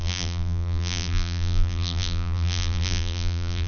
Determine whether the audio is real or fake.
fake